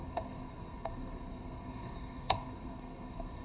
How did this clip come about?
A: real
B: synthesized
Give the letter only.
B